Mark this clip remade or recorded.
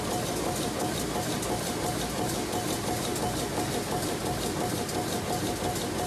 recorded